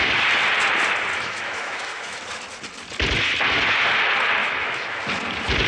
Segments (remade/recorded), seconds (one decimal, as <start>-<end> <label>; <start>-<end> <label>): 0.0-1.1 recorded; 1.1-2.2 remade; 2.2-4.4 recorded; 4.4-5.0 remade; 5.0-5.7 recorded